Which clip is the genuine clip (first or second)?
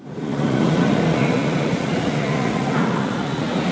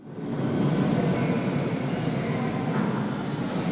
second